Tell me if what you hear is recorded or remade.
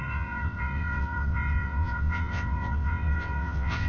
remade